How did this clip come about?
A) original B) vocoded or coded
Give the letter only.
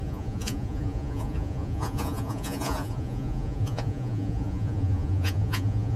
B